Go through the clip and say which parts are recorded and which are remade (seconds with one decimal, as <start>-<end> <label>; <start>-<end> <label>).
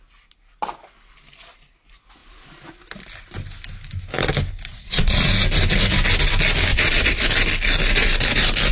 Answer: 0.0-4.7 recorded; 4.7-5.3 remade; 5.3-6.7 recorded; 6.7-7.2 remade; 7.2-8.7 recorded